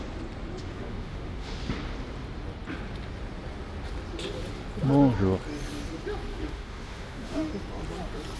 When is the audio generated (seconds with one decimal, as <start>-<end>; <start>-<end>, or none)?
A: 0.6-1.6; 6.3-7.5